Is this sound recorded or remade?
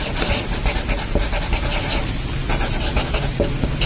recorded